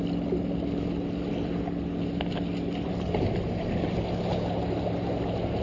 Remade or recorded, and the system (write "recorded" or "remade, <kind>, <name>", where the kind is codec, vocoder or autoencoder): recorded